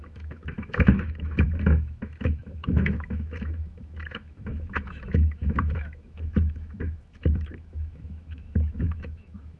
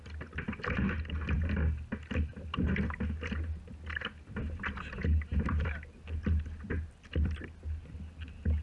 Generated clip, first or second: first